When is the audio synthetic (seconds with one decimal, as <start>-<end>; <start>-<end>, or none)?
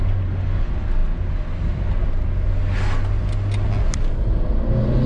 none